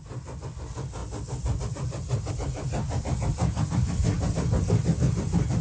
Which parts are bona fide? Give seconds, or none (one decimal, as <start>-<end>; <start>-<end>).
0.0-5.6